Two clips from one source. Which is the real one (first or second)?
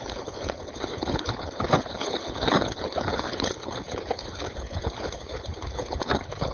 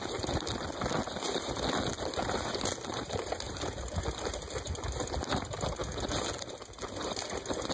second